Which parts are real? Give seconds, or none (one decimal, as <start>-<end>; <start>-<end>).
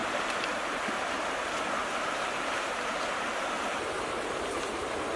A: none